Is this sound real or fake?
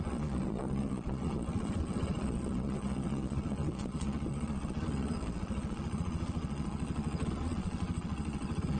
fake